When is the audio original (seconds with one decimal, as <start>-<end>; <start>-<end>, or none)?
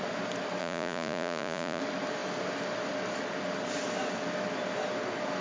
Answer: 0.0-0.6; 1.8-5.4